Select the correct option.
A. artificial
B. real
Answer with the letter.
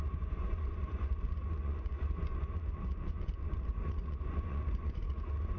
A